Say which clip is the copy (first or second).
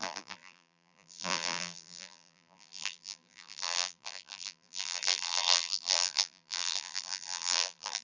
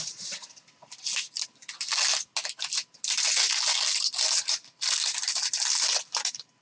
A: first